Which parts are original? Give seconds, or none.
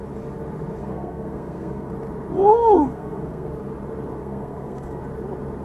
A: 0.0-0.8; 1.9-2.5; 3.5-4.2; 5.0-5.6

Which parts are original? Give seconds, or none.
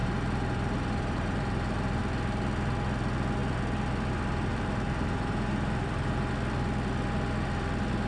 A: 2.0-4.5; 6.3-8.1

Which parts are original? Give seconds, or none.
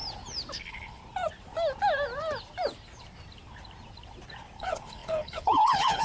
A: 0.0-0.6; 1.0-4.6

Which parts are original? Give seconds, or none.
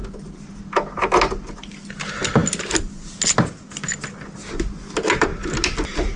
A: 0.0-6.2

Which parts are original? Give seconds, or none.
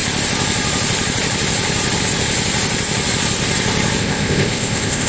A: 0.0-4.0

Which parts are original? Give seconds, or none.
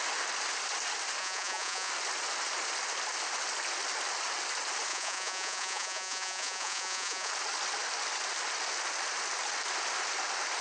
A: 0.0-1.2; 1.9-4.9; 7.3-10.6